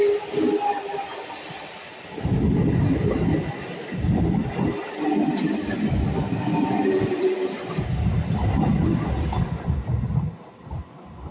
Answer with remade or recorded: recorded